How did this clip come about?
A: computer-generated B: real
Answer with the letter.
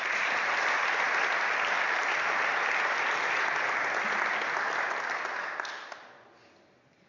B